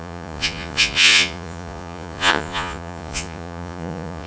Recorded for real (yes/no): no